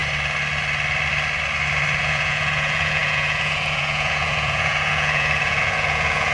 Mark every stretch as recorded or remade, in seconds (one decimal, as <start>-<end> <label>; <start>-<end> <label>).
0.0-2.0 recorded; 2.0-6.3 remade